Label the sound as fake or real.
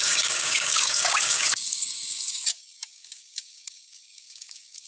fake